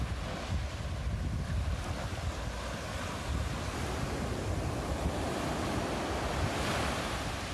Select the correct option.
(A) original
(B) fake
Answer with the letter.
A